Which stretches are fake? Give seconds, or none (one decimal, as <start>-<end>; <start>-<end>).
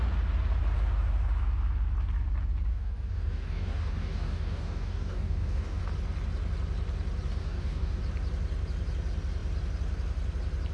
2.7-5.8; 7.4-8.0